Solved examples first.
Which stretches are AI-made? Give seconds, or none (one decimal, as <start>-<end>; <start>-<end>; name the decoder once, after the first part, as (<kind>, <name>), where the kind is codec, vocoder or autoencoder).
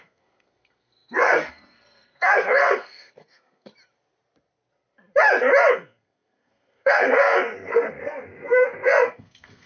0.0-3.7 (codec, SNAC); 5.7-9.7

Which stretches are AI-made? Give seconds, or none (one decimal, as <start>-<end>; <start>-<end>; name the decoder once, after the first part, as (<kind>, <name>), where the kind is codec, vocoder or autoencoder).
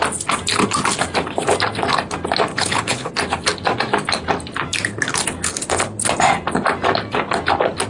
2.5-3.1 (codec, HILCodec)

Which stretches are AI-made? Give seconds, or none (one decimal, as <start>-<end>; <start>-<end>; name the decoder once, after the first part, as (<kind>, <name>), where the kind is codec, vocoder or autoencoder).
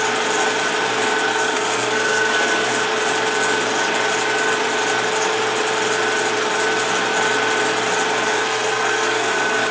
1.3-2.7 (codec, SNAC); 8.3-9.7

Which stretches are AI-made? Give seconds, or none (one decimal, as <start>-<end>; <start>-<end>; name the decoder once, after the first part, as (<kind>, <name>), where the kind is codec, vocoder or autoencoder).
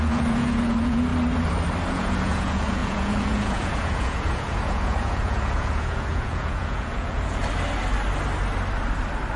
0.0-1.1 (vocoder, Vocos); 1.9-7.4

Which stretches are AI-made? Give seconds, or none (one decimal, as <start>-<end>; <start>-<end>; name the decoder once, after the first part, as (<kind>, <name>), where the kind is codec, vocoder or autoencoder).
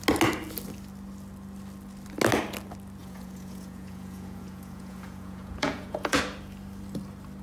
3.0-6.2 (vocoder, Vocos)